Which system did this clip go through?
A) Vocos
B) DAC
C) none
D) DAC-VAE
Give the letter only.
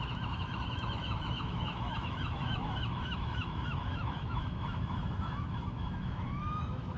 D